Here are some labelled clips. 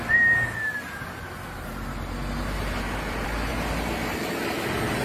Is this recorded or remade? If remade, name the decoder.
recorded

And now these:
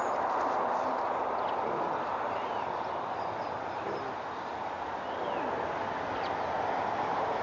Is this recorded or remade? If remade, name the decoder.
recorded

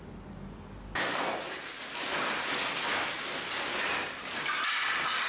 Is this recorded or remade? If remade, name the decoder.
recorded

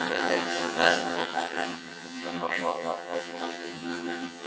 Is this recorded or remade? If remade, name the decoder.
remade, vocoder, HiFi-GAN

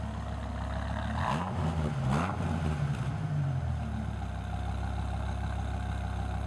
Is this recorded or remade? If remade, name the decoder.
recorded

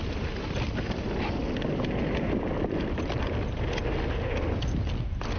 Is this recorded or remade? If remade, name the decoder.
recorded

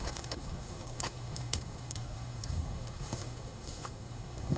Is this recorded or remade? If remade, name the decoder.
remade, codec, SNAC